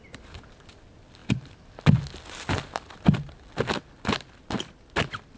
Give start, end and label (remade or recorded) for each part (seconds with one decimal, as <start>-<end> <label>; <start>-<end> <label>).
0.0-5.4 recorded